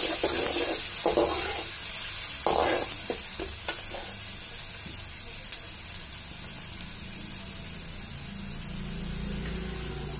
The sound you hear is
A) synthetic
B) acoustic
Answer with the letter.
B